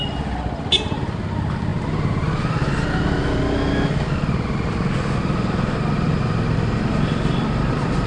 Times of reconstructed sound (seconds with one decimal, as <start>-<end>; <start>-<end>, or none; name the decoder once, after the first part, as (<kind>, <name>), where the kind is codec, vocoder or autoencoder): none